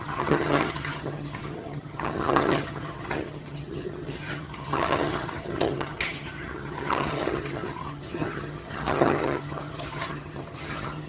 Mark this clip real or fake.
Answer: fake